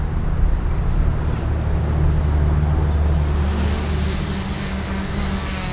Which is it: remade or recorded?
recorded